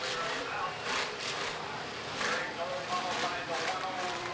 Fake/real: fake